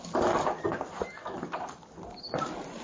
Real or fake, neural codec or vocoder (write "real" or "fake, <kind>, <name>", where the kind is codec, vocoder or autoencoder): real